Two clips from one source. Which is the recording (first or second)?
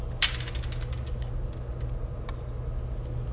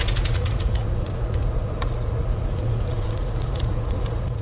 first